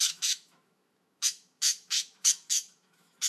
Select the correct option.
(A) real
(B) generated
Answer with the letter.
B